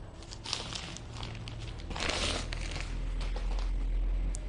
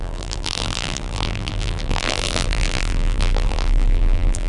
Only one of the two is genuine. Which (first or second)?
first